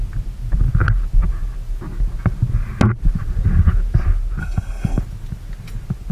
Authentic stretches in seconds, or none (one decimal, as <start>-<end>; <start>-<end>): 0.0-4.4; 5.0-6.1